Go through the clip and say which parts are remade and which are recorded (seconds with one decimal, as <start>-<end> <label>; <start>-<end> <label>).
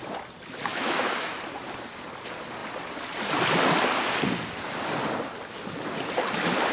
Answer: 0.0-0.7 recorded; 0.7-1.4 remade; 1.4-6.7 recorded